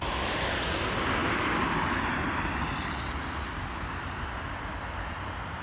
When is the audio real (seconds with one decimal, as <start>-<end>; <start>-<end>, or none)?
0.0-5.6